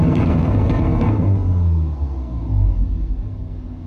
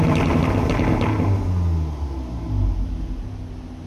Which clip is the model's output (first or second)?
first